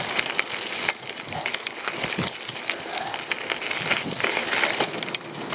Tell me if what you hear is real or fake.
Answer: real